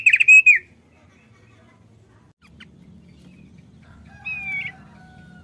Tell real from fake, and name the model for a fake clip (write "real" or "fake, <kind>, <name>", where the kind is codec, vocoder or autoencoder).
real